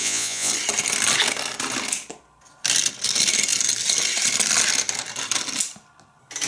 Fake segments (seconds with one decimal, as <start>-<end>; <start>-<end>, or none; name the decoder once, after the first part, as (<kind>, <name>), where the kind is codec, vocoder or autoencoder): 0.0-0.5 (vocoder, Vocos)